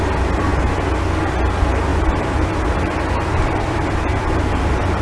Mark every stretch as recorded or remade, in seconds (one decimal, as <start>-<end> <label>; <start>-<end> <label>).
0.0-1.9 recorded; 1.9-5.0 remade